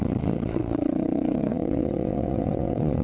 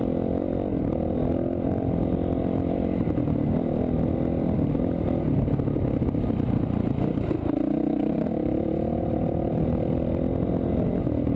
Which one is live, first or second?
second